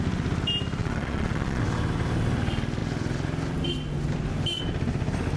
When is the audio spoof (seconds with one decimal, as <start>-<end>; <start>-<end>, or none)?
0.8-1.6